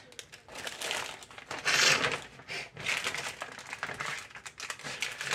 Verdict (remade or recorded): recorded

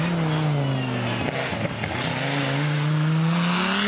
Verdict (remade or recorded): recorded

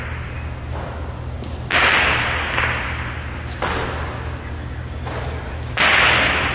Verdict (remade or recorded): recorded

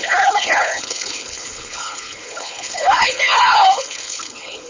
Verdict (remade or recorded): remade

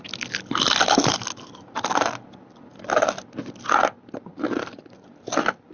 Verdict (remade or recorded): recorded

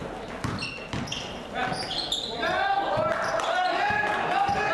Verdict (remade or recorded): recorded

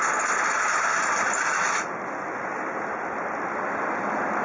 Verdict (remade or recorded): recorded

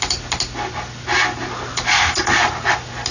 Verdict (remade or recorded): recorded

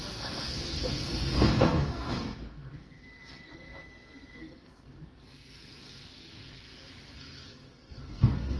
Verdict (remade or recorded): remade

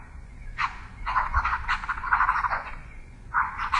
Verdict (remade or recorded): remade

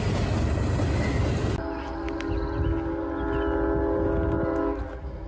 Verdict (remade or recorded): recorded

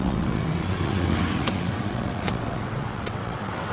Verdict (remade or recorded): remade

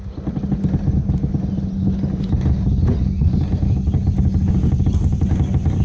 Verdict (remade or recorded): recorded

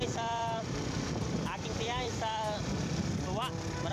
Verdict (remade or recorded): remade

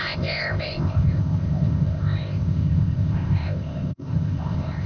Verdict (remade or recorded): remade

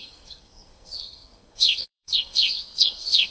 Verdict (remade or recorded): remade